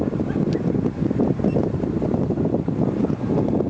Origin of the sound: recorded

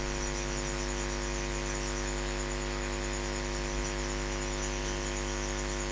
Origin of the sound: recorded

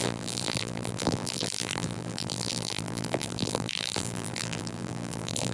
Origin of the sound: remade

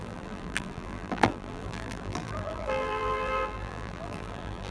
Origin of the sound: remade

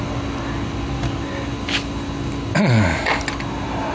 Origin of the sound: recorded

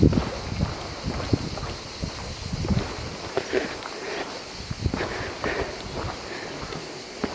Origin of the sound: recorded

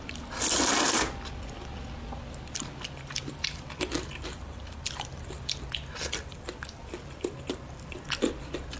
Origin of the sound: remade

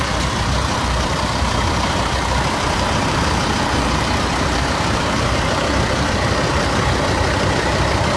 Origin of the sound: remade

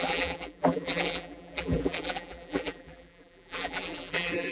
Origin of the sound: remade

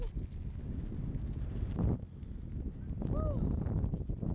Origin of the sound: recorded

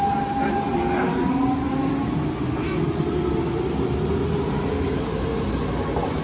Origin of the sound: recorded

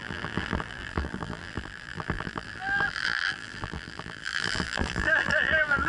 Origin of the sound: remade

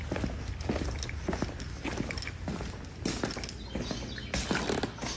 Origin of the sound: recorded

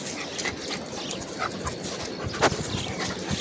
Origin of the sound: recorded